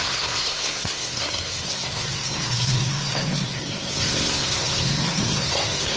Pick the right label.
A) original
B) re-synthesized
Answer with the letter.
B